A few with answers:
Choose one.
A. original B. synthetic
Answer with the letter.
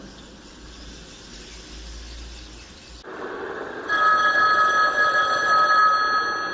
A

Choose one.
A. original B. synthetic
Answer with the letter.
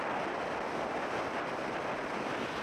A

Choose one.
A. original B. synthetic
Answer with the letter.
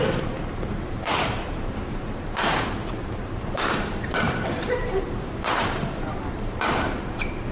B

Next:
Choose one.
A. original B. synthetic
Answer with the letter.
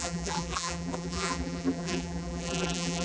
B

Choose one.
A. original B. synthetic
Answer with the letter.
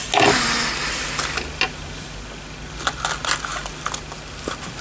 A